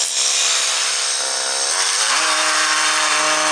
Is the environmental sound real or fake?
real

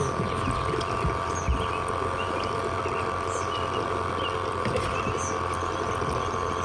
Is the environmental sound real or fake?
real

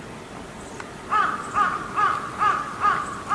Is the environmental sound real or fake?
real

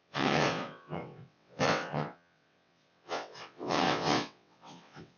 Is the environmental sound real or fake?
fake